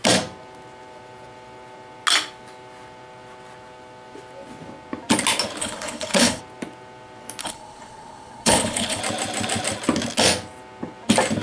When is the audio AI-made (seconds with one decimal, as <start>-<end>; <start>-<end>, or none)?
5.6-6.4; 7.4-9.0